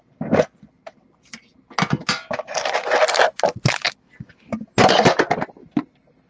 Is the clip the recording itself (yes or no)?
yes